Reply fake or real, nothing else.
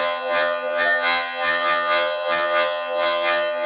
fake